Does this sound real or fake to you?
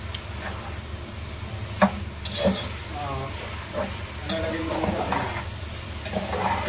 real